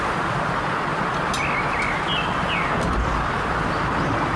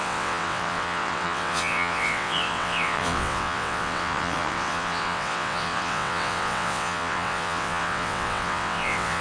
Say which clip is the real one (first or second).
first